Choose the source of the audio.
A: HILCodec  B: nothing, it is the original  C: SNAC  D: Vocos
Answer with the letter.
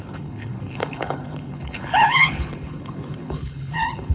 A